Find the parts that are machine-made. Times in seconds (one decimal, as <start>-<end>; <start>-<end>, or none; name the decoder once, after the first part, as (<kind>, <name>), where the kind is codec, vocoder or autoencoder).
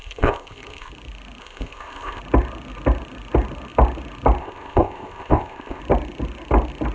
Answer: 0.0-0.9 (codec, ZipCodec); 1.4-2.2; 4.4-5.8